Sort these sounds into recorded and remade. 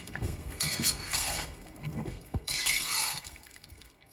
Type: remade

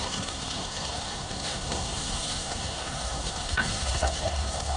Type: remade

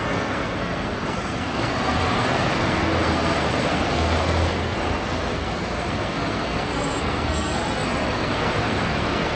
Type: remade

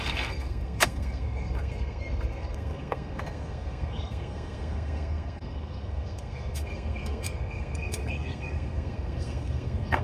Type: remade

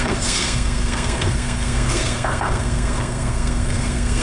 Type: remade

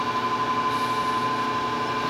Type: recorded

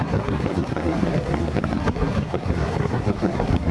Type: remade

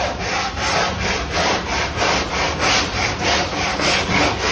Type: recorded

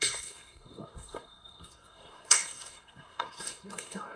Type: remade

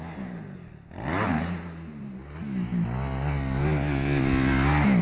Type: recorded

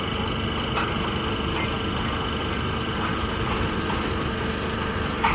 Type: recorded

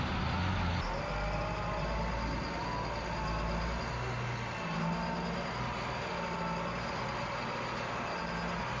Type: recorded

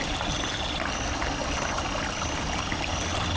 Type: recorded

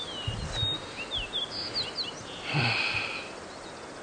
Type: recorded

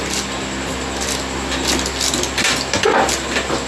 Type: recorded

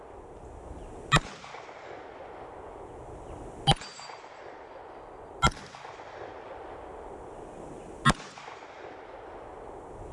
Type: recorded